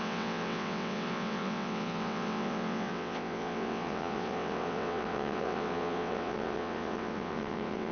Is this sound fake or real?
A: fake